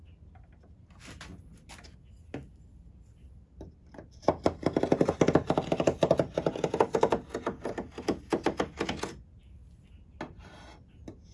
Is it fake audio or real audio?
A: real